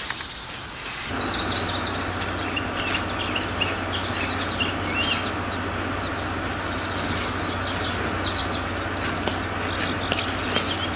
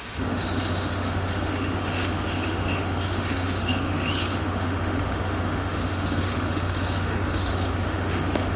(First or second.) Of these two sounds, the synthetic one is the second